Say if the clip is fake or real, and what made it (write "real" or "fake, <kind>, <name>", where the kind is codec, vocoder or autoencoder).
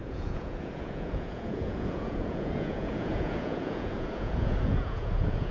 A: fake, vocoder, Vocos